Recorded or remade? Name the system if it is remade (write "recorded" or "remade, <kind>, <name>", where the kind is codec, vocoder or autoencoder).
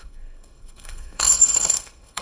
remade, codec, SNAC